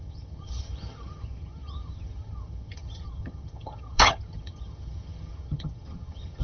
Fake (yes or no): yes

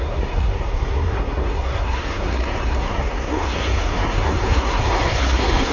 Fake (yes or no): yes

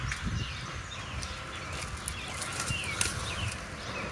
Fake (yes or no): no